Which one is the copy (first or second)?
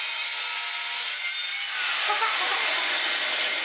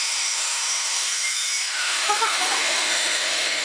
second